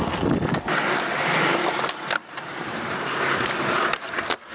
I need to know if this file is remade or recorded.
recorded